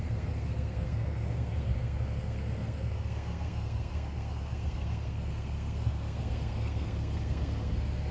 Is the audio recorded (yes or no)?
no